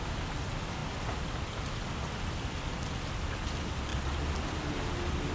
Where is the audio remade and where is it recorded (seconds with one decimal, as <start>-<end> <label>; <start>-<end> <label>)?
0.0-5.3 recorded